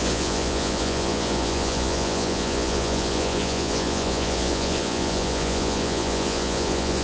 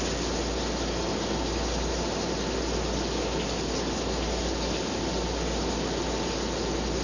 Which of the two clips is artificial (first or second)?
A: first